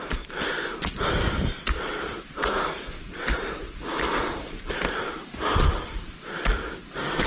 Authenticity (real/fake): real